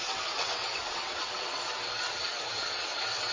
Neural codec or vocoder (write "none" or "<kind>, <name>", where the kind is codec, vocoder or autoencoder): vocoder, WaveNeXt